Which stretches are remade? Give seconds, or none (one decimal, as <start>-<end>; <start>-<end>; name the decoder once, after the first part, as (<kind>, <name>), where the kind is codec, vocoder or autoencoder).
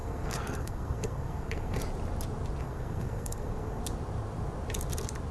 0.0-1.8 (codec, SNAC); 2.6-3.8